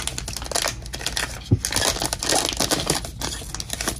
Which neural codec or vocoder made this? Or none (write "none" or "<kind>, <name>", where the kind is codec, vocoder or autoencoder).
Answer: none